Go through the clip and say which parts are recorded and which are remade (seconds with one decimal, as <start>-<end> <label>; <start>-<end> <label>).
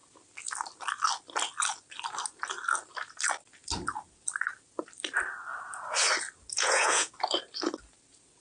0.0-6.5 recorded; 6.5-7.1 remade; 7.1-8.4 recorded